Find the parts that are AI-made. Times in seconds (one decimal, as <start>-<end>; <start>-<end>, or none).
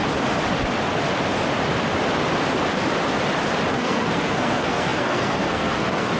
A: 3.7-6.2